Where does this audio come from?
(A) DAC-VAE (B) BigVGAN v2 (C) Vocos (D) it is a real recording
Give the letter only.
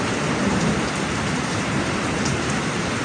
B